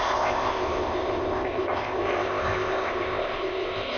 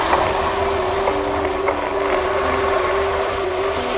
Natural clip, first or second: second